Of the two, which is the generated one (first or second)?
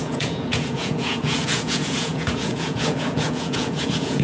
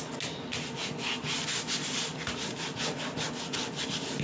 first